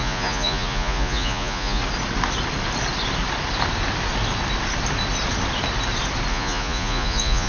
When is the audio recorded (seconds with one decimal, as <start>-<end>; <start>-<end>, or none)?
1.8-6.3